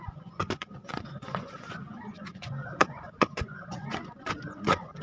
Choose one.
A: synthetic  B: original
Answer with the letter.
A